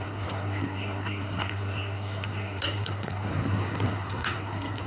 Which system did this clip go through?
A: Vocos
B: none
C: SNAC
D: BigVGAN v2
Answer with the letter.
C